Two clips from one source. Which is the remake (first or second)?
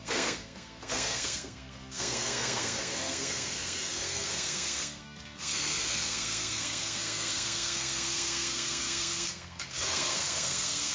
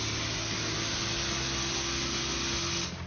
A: first